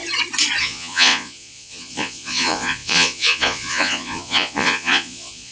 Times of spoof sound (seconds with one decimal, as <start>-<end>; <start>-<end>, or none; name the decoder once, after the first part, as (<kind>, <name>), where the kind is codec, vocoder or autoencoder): 0.6-5.5 (vocoder, Vocos)